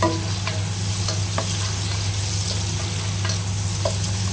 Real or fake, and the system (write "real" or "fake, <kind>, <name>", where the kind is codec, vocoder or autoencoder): real